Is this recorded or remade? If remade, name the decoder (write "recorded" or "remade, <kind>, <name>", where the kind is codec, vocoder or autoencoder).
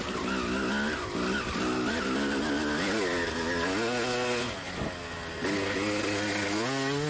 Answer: recorded